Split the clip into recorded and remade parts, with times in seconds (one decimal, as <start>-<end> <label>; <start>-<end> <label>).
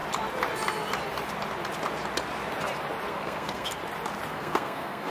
0.0-3.1 recorded; 3.1-3.8 remade; 3.8-4.3 recorded; 4.3-5.1 remade